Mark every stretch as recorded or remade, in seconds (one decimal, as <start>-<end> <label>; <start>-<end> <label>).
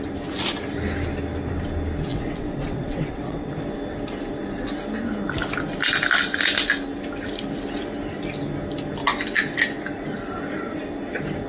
0.0-2.1 recorded; 2.1-3.5 remade; 3.5-11.5 recorded